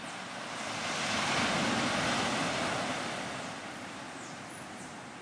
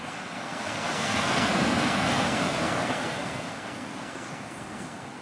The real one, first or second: first